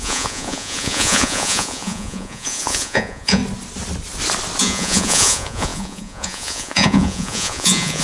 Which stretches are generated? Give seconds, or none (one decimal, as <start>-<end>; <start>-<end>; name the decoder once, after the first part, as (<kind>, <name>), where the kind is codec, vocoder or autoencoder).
0.0-3.4 (vocoder, Vocos); 4.6-8.0